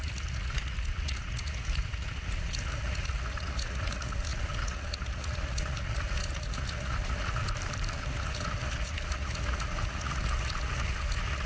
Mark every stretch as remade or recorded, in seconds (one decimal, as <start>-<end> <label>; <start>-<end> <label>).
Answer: 0.0-7.4 remade; 7.4-7.9 recorded; 7.9-11.5 remade